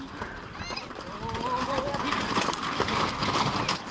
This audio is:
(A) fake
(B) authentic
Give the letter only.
B